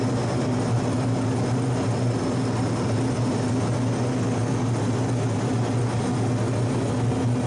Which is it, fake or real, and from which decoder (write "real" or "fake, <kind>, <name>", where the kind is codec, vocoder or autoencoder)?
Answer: real